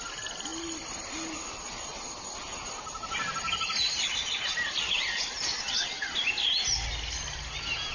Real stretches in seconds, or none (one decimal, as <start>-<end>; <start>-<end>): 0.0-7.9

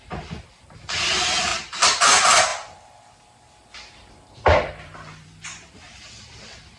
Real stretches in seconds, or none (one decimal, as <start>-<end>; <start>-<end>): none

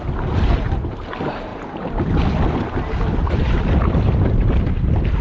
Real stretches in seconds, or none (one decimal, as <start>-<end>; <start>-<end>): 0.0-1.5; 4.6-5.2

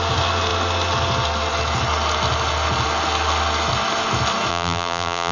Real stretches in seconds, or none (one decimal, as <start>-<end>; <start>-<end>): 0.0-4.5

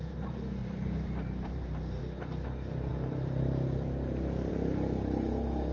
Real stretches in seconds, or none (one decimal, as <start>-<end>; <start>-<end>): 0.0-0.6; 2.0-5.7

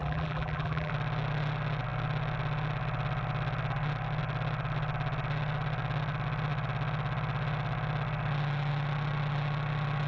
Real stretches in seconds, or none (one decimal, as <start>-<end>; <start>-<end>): 0.9-10.1

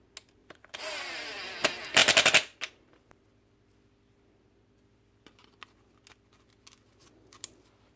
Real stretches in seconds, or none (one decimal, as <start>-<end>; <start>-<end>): 0.0-0.4; 1.0-8.0

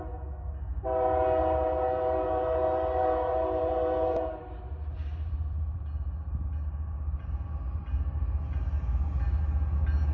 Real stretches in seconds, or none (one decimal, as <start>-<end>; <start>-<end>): 0.0-0.7; 5.8-10.1